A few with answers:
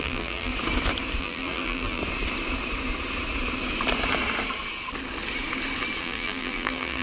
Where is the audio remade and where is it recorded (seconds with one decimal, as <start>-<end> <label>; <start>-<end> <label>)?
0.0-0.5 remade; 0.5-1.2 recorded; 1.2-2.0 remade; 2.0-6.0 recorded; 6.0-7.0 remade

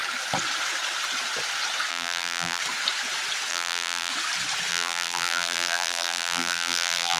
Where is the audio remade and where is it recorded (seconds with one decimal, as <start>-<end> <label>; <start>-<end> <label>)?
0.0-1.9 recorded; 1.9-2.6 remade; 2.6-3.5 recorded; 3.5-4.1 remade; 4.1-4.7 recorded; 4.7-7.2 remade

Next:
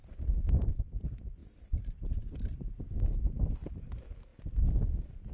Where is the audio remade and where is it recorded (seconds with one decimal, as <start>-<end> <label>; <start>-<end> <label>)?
0.0-0.7 recorded; 0.7-4.3 remade; 4.3-4.8 recorded; 4.8-5.3 remade

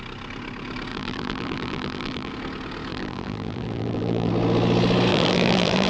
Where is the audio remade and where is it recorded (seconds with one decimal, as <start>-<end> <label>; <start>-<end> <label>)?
0.0-0.9 recorded; 0.9-2.3 remade; 2.3-2.9 recorded; 2.9-4.3 remade; 4.3-5.1 recorded; 5.1-5.9 remade

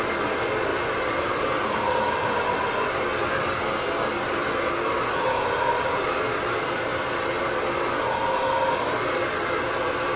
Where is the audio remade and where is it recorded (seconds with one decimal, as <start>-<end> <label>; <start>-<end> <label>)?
0.0-0.7 recorded; 0.7-2.6 remade; 2.6-6.9 recorded; 6.9-7.5 remade; 7.5-10.2 recorded